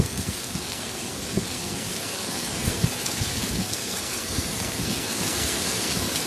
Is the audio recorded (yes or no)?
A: no